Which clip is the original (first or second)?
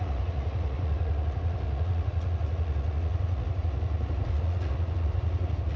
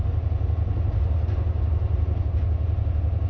second